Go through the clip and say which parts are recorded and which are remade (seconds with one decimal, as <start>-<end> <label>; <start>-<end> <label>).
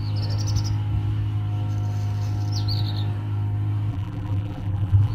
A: 0.0-3.9 recorded; 3.9-5.1 remade